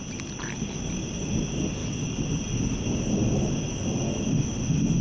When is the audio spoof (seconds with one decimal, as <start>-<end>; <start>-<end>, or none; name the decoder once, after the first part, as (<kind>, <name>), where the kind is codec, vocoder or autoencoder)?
none